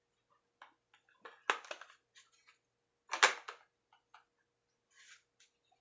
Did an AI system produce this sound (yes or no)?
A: no